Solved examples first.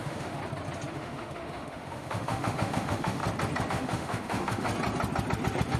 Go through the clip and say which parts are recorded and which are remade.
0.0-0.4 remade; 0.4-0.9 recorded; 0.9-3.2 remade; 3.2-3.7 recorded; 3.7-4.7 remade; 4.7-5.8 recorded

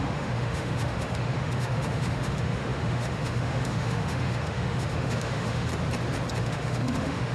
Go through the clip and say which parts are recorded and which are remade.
0.0-5.7 remade; 5.7-6.4 recorded; 6.4-7.3 remade

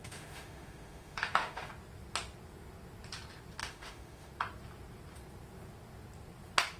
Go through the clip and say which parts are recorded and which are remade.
0.0-1.7 remade; 1.7-3.6 recorded; 3.6-4.3 remade; 4.3-6.8 recorded

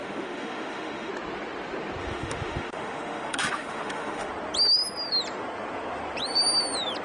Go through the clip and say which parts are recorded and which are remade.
0.0-1.1 remade; 1.1-2.0 recorded; 2.0-4.3 remade; 4.3-7.0 recorded

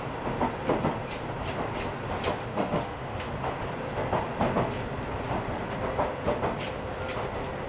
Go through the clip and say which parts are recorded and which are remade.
0.0-2.5 recorded; 2.5-3.3 remade; 3.3-7.7 recorded

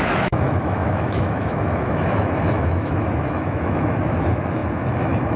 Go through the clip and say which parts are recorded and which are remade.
0.0-5.4 remade

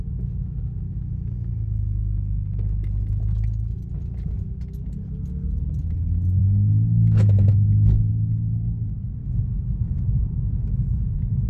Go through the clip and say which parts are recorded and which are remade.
0.0-6.4 recorded; 6.4-8.1 remade; 8.1-9.2 recorded; 9.2-9.9 remade; 9.9-11.5 recorded

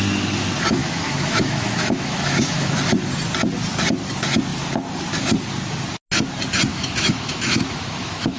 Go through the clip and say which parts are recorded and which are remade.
0.0-0.8 recorded; 0.8-2.8 remade; 2.8-6.7 recorded; 6.7-8.4 remade